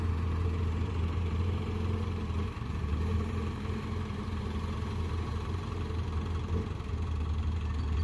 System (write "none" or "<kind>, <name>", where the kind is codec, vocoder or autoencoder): vocoder, BigVGAN v2